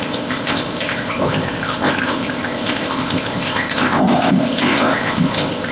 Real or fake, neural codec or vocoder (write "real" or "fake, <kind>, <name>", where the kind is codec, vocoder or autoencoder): fake, codec, ZipCodec